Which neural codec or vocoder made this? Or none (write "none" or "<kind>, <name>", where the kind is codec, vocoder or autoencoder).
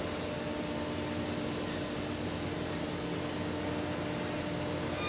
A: none